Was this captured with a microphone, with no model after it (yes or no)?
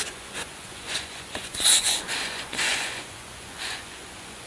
no